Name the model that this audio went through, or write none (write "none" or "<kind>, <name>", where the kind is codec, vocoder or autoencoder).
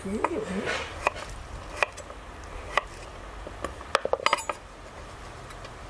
none